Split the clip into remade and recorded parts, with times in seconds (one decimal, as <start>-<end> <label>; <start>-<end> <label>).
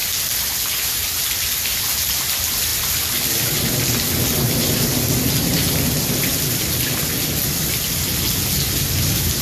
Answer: 0.0-9.4 recorded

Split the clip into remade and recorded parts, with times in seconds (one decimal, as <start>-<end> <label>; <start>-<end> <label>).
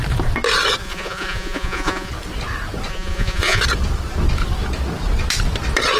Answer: 0.0-0.8 recorded; 0.8-2.1 remade; 2.1-2.9 recorded; 2.9-3.6 remade; 3.6-6.0 recorded